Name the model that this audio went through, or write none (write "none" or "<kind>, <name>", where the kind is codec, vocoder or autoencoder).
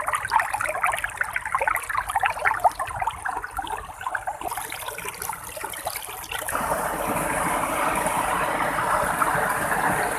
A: none